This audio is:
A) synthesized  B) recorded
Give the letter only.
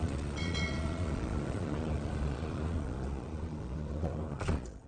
A